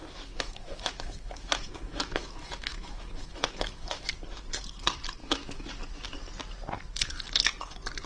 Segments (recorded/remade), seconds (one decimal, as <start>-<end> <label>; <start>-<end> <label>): 0.0-4.1 remade; 4.1-5.2 recorded; 5.2-5.7 remade; 5.7-8.1 recorded